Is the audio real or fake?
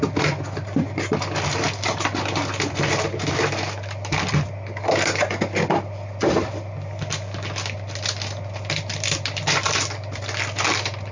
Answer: real